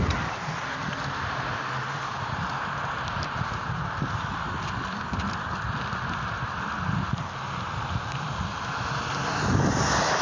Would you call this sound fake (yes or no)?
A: no